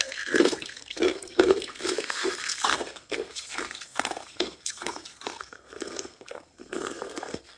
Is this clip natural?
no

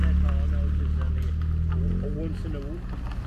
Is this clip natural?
yes